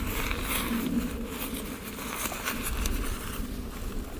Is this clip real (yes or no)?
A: yes